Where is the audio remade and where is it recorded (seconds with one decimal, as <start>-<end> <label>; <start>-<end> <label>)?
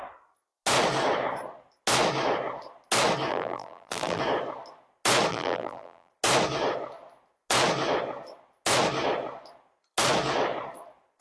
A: 0.0-3.3 recorded; 3.3-4.2 remade; 4.2-5.3 recorded; 5.3-6.1 remade; 6.1-11.2 recorded